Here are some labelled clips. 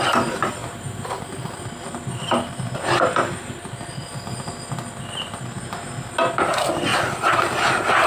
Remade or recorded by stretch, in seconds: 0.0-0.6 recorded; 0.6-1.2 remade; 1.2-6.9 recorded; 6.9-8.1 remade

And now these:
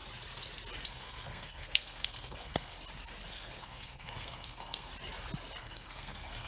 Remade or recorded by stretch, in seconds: 0.0-0.9 recorded; 0.9-2.7 remade; 2.7-3.3 recorded; 3.3-4.9 remade; 4.9-5.6 recorded; 5.6-6.5 remade